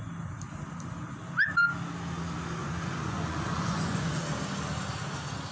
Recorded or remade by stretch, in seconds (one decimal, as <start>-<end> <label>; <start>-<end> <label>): 0.0-2.6 recorded; 2.6-4.2 remade; 4.2-5.5 recorded